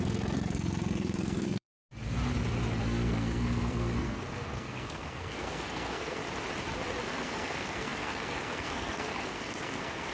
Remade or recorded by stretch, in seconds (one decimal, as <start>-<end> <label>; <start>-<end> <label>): 0.0-1.7 remade; 1.7-2.8 recorded; 2.8-6.2 remade; 6.2-7.0 recorded; 7.0-10.1 remade